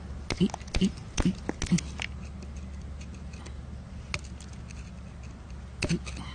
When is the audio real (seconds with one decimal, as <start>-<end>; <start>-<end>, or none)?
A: 0.0-6.3